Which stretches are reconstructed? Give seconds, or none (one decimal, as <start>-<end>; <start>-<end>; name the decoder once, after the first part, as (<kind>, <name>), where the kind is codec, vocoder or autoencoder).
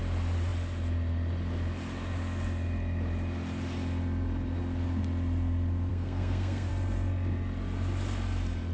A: 5.9-6.7 (codec, SNAC)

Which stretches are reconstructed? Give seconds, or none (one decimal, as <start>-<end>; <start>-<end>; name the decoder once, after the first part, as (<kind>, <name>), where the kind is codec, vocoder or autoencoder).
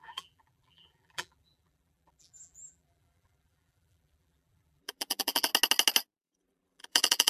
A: 0.0-5.5 (vocoder, BigVGAN v2); 6.2-7.3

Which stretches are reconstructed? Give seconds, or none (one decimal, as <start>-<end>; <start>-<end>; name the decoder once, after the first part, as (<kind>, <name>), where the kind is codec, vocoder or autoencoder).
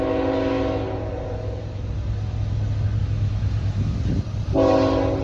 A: 3.0-3.9 (autoencoder, DAC-VAE)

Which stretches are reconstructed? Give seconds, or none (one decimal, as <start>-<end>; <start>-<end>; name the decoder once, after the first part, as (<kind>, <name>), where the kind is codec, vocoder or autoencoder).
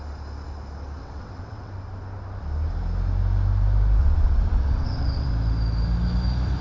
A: 1.0-1.7 (vocoder, WaveNeXt); 4.0-5.3